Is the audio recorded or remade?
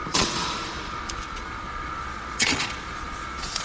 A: remade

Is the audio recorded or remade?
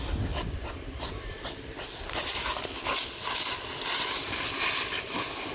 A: recorded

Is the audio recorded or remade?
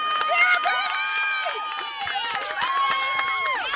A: recorded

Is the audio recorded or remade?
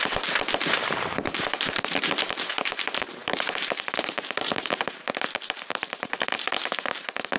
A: remade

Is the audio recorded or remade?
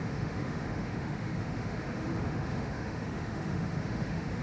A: remade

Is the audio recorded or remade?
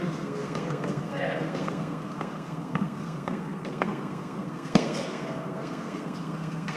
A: remade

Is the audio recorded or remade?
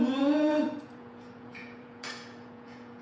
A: remade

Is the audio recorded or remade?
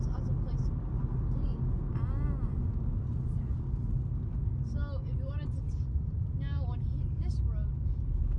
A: recorded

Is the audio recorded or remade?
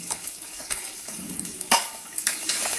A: remade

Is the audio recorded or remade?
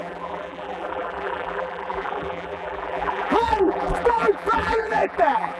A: remade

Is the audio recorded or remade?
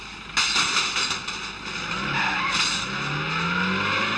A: recorded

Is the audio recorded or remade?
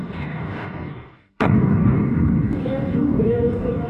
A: remade